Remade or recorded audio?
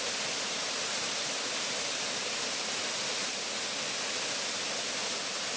recorded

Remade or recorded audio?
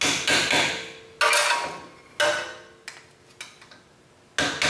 recorded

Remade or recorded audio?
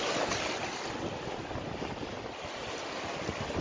recorded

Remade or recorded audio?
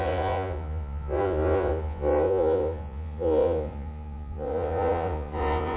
remade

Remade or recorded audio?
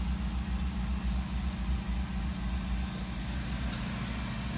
recorded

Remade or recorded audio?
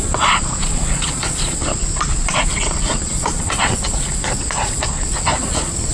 remade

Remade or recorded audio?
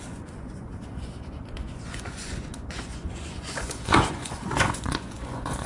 remade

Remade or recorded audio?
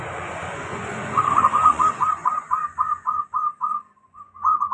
remade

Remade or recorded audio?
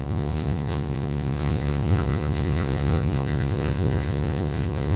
remade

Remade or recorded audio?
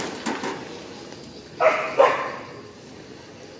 recorded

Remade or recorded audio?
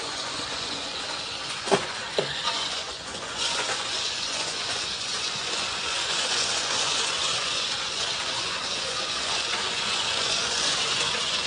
remade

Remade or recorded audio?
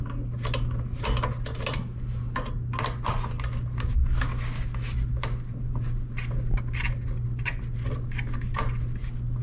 recorded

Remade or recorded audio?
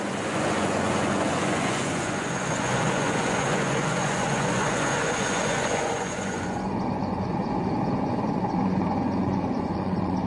remade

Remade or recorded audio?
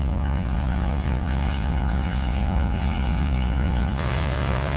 remade